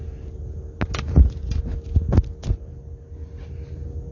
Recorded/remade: recorded